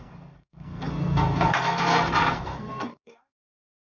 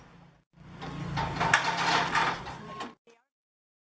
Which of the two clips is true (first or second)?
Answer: second